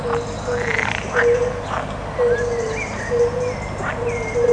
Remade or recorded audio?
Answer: recorded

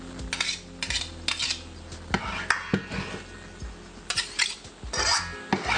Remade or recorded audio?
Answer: recorded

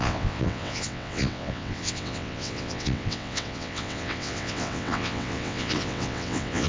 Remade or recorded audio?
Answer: remade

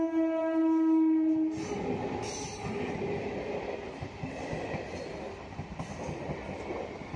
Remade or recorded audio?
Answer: recorded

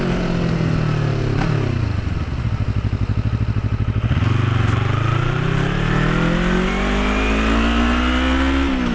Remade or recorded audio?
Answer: recorded